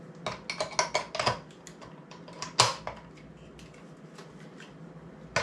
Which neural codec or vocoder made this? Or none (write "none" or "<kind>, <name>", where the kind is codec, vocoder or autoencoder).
none